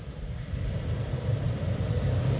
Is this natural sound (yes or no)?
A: no